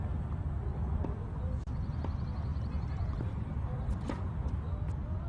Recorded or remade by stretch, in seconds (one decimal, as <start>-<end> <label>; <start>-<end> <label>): 0.0-2.5 recorded; 2.5-4.3 remade; 4.3-5.3 recorded